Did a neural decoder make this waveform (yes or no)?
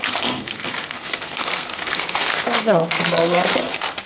yes